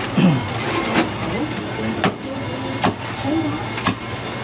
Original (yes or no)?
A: yes